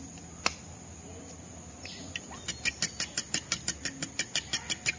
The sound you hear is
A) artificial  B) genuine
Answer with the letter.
B